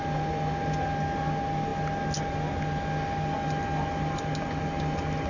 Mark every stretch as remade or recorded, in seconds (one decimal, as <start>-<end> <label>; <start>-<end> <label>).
0.0-5.3 recorded